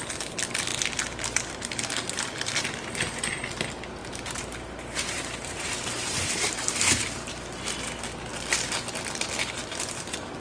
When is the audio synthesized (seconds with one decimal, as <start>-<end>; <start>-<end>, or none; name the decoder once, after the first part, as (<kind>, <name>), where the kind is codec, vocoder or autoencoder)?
4.0-7.3 (vocoder, BigVGAN v2)